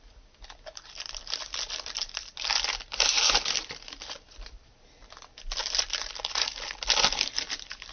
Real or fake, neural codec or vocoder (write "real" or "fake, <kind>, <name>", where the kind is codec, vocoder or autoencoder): fake, vocoder, BigVGAN v2